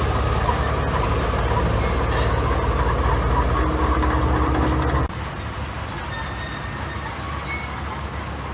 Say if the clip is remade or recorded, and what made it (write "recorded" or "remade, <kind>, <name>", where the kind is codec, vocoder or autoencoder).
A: recorded